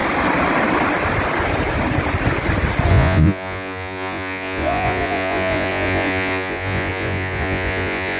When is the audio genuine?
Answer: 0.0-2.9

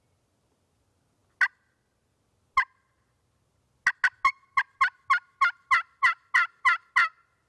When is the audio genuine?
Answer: 0.0-7.5

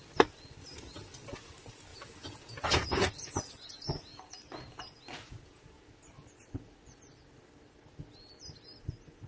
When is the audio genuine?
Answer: 0.0-1.9; 4.0-5.3; 5.9-9.3

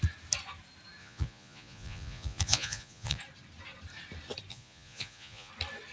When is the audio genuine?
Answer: 0.0-1.0; 3.2-4.5; 5.5-5.9